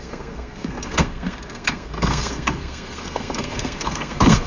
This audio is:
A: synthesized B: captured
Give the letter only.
A